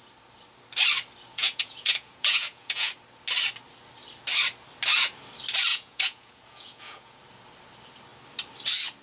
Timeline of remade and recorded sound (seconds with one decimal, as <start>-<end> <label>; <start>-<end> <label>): 0.0-1.3 recorded; 1.3-2.9 remade; 2.9-5.7 recorded; 5.7-7.2 remade; 7.2-9.0 recorded